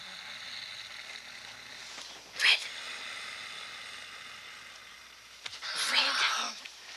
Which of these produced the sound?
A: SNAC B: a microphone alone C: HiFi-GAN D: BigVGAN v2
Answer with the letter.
B